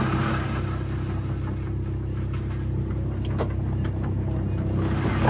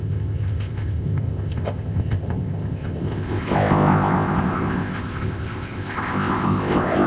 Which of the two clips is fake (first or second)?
second